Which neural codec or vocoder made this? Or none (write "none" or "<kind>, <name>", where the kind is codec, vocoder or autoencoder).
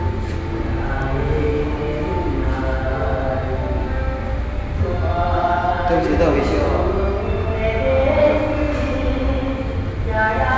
none